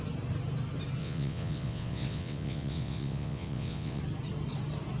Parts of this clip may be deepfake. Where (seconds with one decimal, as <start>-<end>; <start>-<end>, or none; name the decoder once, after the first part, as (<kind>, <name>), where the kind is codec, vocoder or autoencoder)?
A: 1.0-4.0 (vocoder, WaveNeXt)